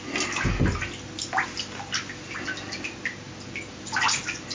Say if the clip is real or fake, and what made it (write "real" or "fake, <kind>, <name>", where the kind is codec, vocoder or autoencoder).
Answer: real